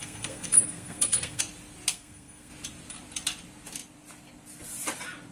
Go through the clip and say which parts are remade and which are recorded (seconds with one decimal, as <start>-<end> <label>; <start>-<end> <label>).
0.0-1.4 remade; 1.4-1.9 recorded; 1.9-2.5 remade; 2.5-5.3 recorded